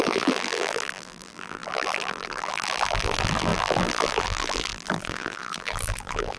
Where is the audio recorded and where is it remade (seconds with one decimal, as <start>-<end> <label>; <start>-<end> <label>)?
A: 0.0-6.4 remade